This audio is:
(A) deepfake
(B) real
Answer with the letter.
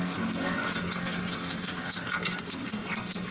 A